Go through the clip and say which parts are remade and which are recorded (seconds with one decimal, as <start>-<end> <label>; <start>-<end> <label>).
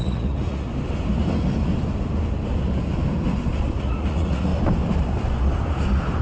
0.0-0.7 remade; 0.7-3.8 recorded; 3.8-4.5 remade; 4.5-6.2 recorded